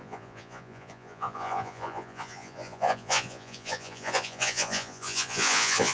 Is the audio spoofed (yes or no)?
yes